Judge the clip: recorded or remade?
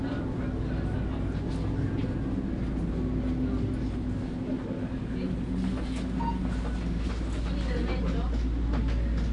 recorded